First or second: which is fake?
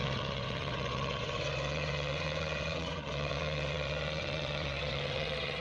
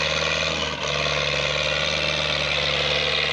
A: first